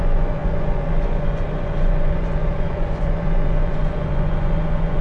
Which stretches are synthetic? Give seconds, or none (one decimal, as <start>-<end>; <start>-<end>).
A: 0.0-5.0